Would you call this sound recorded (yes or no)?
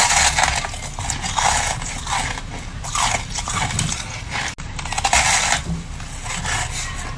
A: yes